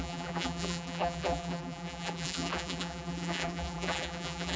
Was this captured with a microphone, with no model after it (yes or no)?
no